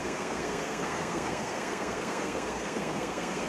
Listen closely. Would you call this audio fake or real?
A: fake